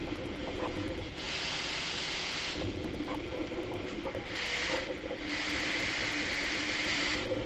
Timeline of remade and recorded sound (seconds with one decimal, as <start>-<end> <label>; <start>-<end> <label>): 0.0-3.4 remade; 3.4-7.5 recorded